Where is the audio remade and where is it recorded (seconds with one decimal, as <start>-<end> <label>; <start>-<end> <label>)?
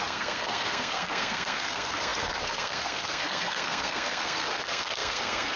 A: 0.0-5.6 remade